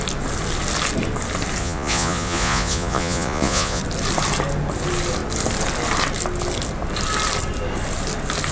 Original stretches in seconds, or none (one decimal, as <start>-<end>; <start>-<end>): 0.0-1.6; 3.8-8.5